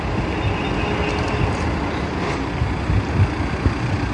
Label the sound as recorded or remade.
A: recorded